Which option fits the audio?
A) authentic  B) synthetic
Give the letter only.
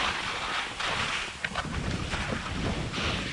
A